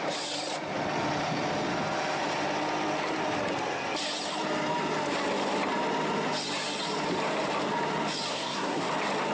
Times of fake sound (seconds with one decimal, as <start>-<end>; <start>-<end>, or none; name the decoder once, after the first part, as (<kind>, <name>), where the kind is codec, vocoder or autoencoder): 8.3-8.9 (codec, SNAC)